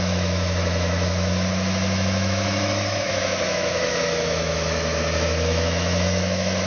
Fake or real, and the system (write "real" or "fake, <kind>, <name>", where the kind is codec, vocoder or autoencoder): fake, autoencoder, DAC-VAE